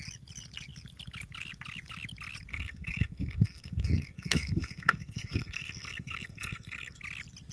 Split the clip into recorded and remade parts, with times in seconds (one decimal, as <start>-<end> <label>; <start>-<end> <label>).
0.0-2.5 recorded; 2.5-7.0 remade; 7.0-7.5 recorded